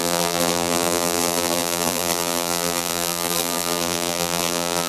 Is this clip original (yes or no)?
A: no